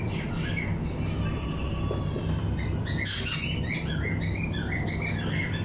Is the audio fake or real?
fake